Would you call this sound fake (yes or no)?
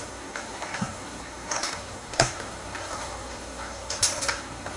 yes